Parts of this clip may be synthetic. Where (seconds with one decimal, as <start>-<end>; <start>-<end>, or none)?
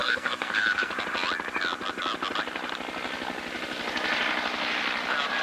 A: 0.0-0.9